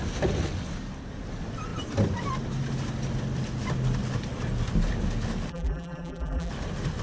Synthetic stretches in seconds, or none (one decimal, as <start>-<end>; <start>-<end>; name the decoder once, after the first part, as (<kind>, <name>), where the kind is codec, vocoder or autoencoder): 5.5-6.5 (vocoder, BigVGAN v2)